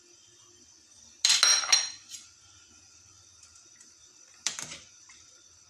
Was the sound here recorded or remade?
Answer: recorded